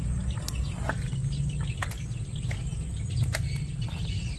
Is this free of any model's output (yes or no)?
yes